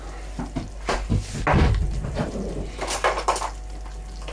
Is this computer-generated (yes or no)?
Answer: no